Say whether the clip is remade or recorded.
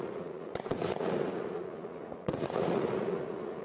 remade